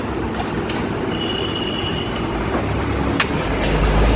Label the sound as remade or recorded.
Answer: recorded